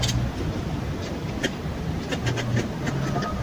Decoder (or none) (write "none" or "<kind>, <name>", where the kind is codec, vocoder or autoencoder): none